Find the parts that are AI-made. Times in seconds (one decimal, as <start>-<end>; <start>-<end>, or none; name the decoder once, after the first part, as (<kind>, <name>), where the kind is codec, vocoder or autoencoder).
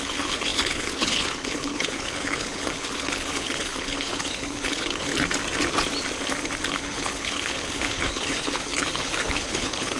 0.0-5.1 (codec, HILCodec); 6.7-10.0